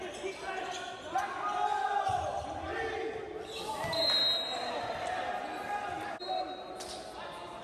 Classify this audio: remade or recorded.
recorded